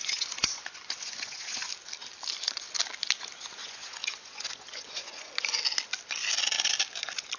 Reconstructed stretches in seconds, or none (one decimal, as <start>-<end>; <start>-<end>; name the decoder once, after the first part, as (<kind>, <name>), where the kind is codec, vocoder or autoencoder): 0.0-1.7 (vocoder, Vocos); 3.6-5.3